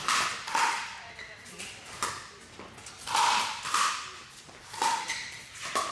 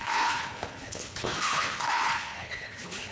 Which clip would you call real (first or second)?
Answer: first